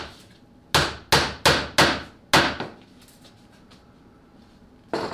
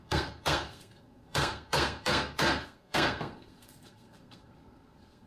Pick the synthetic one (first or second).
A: second